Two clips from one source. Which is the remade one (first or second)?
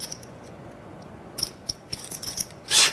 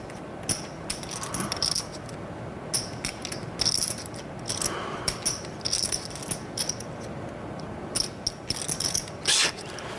first